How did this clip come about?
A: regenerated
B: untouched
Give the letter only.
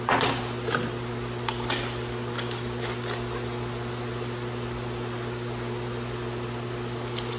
B